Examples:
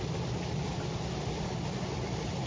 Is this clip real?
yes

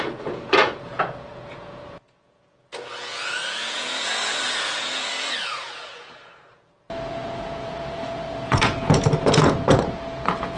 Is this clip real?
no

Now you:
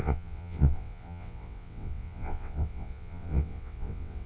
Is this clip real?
no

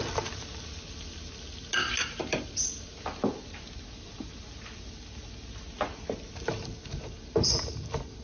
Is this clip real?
yes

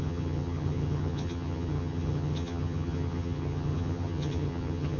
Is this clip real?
no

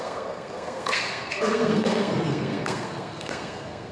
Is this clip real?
no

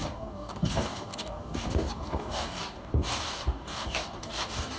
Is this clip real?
no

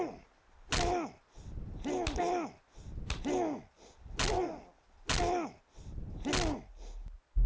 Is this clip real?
yes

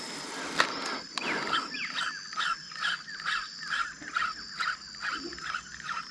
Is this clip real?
yes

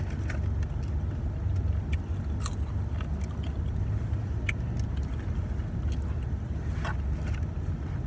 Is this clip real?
yes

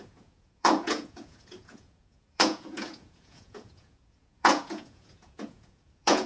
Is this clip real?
no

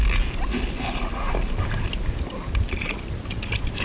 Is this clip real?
yes